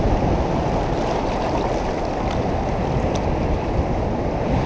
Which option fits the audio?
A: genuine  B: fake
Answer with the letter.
A